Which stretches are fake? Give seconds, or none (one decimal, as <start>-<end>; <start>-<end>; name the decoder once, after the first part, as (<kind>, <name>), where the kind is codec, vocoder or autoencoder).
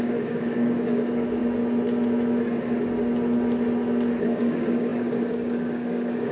0.0-1.4 (codec, DAC); 4.2-6.3